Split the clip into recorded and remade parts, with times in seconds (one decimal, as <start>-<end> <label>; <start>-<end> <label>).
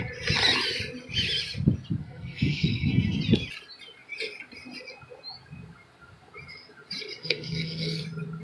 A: 0.0-2.0 recorded; 2.0-3.2 remade; 3.2-7.2 recorded; 7.2-8.0 remade; 8.0-8.4 recorded